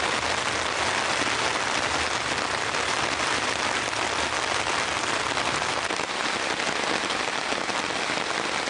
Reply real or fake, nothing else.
real